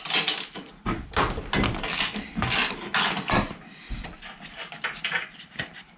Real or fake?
real